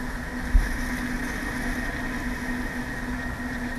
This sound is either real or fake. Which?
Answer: real